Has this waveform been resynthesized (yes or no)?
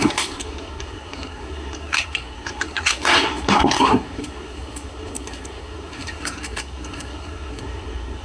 yes